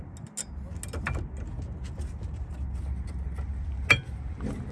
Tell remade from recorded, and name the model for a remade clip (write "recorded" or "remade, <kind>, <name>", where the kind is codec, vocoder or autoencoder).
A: recorded